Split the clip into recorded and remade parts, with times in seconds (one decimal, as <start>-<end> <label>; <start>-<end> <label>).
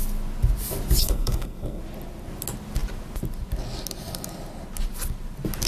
0.0-1.0 recorded; 1.0-1.8 remade; 1.8-5.7 recorded